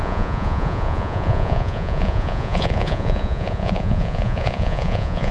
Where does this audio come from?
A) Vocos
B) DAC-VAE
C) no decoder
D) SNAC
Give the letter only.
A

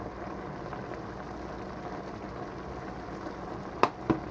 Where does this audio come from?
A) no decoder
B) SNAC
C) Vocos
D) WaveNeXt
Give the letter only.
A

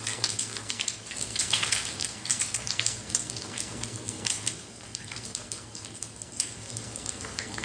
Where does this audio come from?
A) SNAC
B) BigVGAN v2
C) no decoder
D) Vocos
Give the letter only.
A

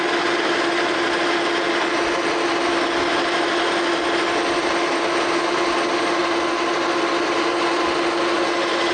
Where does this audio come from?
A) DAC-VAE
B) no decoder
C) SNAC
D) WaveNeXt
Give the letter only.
B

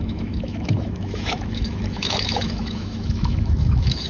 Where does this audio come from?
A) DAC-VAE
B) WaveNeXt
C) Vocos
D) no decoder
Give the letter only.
A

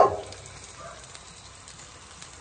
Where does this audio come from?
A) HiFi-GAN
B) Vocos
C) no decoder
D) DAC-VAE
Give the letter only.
C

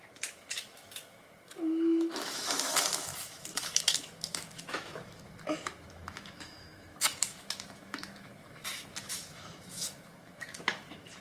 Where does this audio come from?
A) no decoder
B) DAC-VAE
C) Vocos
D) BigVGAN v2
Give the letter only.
B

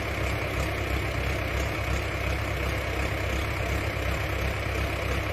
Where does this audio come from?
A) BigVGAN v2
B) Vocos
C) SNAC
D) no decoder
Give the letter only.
D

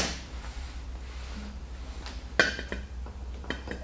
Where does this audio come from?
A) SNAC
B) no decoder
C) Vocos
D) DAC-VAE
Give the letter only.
B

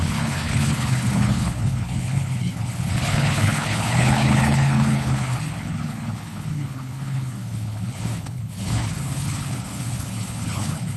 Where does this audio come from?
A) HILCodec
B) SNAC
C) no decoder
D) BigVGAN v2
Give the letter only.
A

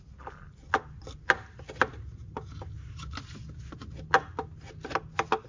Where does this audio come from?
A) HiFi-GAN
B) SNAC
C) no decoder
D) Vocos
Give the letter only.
C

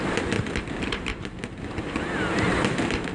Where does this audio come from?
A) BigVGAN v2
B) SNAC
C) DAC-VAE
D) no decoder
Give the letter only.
D